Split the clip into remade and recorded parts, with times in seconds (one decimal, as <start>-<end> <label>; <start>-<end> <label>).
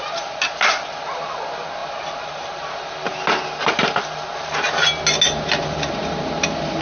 0.0-6.8 recorded